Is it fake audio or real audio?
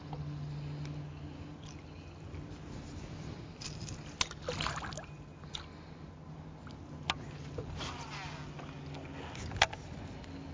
real